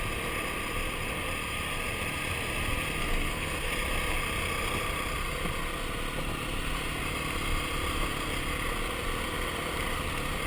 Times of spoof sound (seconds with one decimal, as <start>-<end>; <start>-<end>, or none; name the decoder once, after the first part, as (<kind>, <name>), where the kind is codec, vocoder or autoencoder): 3.0-3.7 (codec, SNAC)